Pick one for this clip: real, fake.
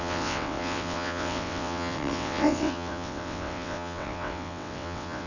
fake